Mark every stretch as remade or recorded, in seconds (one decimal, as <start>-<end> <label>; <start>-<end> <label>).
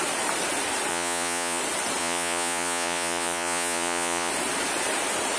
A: 0.0-0.9 recorded; 0.9-1.6 remade; 1.6-2.0 recorded; 2.0-4.3 remade; 4.3-5.4 recorded